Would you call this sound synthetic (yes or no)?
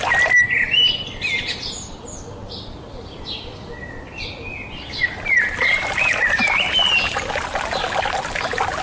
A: no